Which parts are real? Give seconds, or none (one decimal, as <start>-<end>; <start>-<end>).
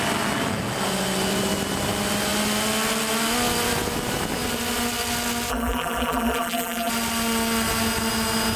0.0-5.5; 6.9-8.6